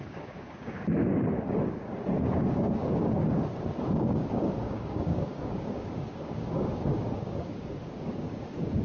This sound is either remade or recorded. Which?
remade